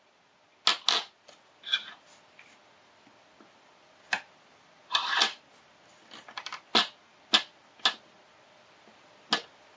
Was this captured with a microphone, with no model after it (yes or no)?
yes